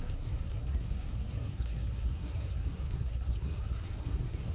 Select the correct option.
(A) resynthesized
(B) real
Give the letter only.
A